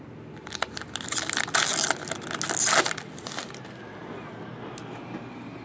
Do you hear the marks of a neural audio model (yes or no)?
no